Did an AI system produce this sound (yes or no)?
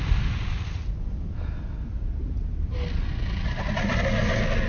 no